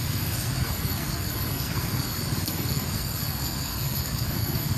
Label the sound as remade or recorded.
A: remade